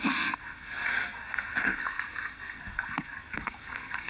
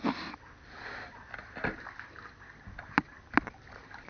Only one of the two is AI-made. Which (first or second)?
first